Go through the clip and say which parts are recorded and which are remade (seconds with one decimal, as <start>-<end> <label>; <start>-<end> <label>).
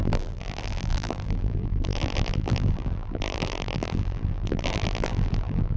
0.0-5.8 remade